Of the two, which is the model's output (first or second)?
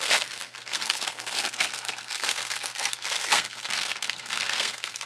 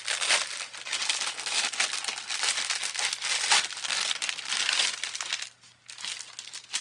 first